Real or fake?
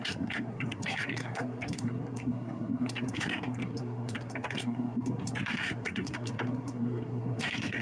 fake